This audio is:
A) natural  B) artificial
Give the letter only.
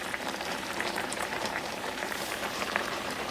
B